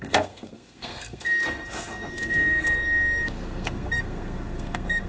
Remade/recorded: remade